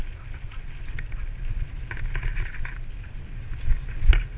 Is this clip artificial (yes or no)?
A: no